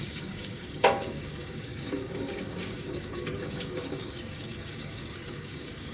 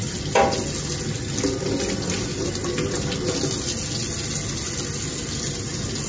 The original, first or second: second